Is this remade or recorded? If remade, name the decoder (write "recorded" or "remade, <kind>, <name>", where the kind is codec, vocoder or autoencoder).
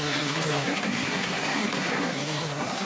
remade, codec, SNAC